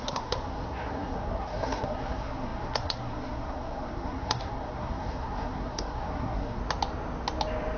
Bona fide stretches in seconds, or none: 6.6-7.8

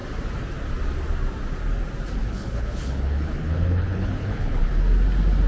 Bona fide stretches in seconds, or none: 0.0-2.2; 4.7-5.5

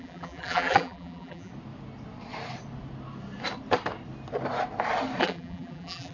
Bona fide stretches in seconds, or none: 1.5-5.2